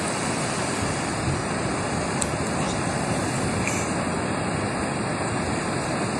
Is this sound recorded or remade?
recorded